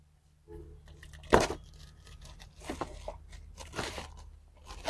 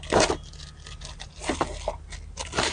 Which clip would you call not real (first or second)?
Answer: first